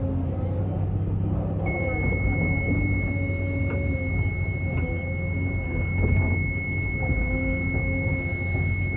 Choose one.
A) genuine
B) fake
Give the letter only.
A